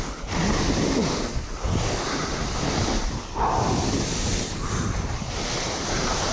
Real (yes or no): yes